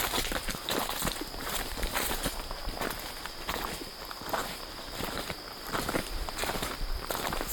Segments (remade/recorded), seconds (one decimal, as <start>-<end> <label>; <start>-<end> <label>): 0.0-1.4 recorded; 1.4-2.3 remade; 2.3-4.4 recorded; 4.4-6.7 remade; 6.7-7.5 recorded